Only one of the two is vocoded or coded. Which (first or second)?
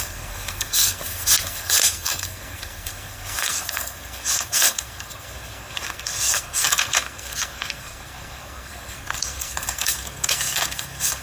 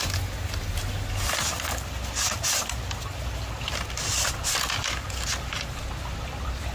first